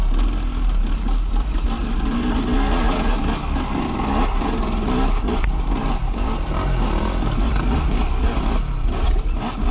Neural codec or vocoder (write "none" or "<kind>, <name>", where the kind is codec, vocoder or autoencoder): none